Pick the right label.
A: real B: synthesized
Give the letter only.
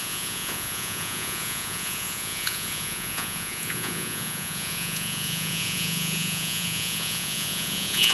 B